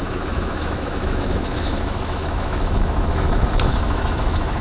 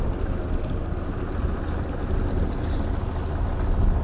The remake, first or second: first